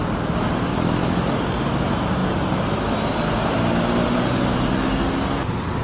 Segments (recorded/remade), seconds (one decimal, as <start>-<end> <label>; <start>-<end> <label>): 0.0-0.7 recorded; 0.7-1.3 remade; 1.3-5.8 recorded